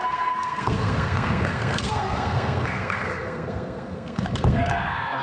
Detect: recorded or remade remade